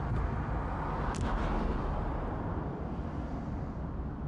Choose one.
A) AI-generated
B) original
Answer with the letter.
B